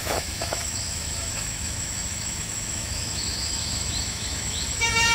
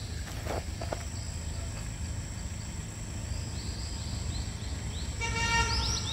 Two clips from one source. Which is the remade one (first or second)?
first